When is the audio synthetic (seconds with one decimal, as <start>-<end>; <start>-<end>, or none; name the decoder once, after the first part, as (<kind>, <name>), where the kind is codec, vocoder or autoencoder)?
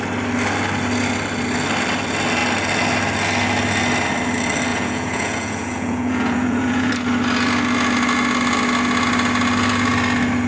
4.7-6.9 (vocoder, Vocos)